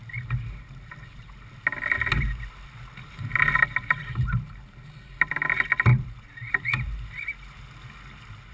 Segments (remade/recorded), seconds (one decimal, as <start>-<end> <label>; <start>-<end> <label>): 0.0-8.5 recorded